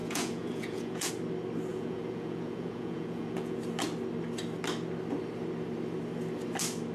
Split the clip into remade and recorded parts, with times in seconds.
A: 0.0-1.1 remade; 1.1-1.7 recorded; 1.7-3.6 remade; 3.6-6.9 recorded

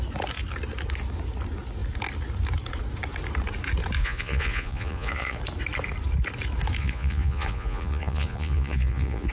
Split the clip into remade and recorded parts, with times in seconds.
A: 0.0-4.0 recorded; 4.0-5.4 remade; 5.4-6.8 recorded; 6.8-9.3 remade

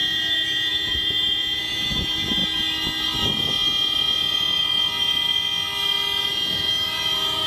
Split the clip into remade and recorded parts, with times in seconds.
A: 0.0-2.4 remade; 2.4-6.3 recorded; 6.3-7.5 remade

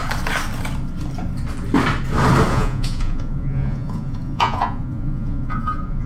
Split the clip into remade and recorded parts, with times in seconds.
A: 0.0-2.5 recorded; 2.5-6.1 remade

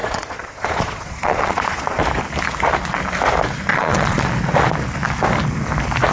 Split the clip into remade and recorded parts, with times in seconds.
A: 0.0-2.0 remade; 2.0-3.7 recorded; 3.7-4.3 remade; 4.3-6.1 recorded

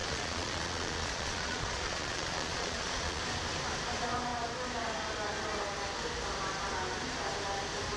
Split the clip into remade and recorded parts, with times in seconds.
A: 0.0-3.2 remade; 3.2-8.0 recorded

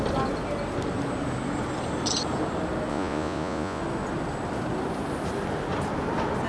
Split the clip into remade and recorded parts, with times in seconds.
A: 0.0-2.9 recorded; 2.9-3.8 remade; 3.8-6.5 recorded